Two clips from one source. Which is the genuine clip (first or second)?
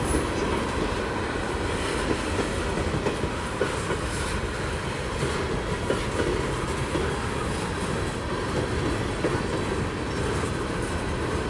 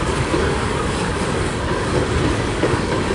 first